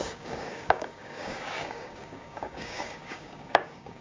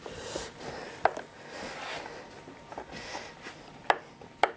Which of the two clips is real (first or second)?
second